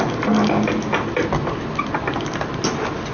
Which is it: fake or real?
real